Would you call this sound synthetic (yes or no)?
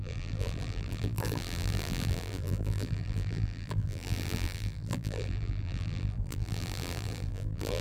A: yes